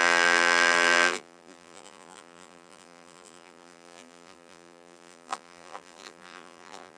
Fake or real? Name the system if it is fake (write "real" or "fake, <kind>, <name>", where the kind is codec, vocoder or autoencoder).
fake, vocoder, BigVGAN v2